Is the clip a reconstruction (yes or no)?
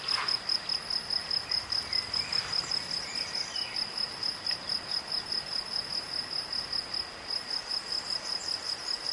no